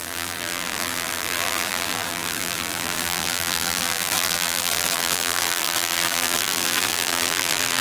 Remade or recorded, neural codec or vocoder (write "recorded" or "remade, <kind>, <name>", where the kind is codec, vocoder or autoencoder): remade, vocoder, BigVGAN v2